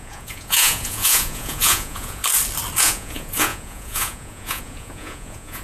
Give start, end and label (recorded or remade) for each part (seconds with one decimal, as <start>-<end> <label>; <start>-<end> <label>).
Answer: 0.0-2.2 remade; 2.2-2.8 recorded; 2.8-5.6 remade